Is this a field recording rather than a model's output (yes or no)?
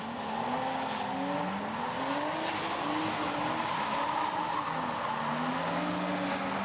yes